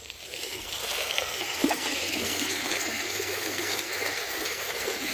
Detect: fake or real fake